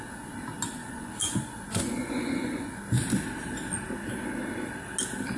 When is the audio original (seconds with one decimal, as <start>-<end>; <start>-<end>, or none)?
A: 0.0-0.8; 2.8-5.4